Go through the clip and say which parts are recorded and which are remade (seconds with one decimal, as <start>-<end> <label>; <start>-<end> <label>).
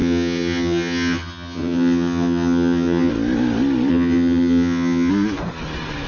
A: 0.0-3.1 remade; 3.1-3.9 recorded; 3.9-5.1 remade; 5.1-6.1 recorded